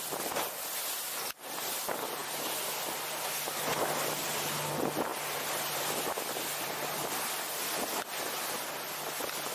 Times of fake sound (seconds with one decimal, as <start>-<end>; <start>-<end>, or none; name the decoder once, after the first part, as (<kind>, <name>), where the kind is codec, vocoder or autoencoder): none